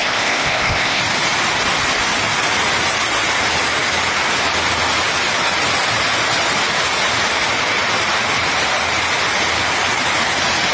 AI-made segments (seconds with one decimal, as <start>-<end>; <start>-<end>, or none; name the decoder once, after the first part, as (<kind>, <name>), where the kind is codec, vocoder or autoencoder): 0.0-1.0 (codec, ZipCodec)